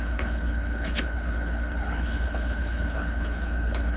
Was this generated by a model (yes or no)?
yes